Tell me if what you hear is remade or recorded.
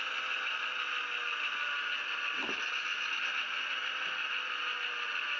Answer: recorded